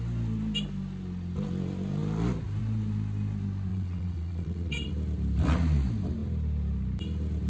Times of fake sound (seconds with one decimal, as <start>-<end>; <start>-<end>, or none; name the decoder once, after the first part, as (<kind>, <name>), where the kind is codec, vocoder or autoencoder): 3.7-4.9 (vocoder, WaveNeXt)